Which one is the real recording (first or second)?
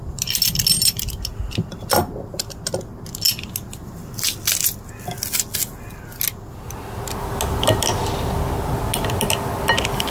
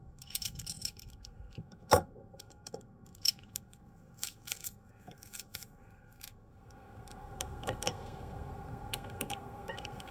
first